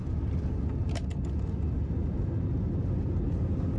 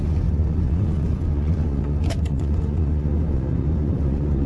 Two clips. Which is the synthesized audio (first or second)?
second